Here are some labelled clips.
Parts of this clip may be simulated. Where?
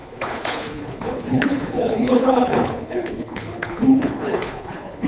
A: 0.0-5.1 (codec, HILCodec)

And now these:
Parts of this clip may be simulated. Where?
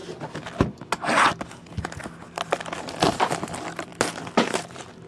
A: 3.1-3.9 (vocoder, BigVGAN v2)